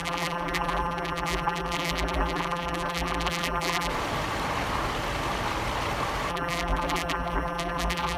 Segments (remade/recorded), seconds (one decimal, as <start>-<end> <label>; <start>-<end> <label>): 0.0-3.9 remade; 3.9-6.3 recorded; 6.3-8.2 remade